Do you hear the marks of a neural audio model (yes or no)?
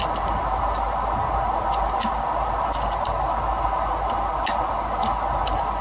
no